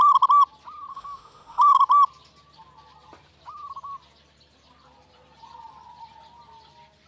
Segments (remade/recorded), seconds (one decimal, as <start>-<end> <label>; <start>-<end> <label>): 0.0-0.9 recorded; 0.9-1.8 remade; 1.8-7.1 recorded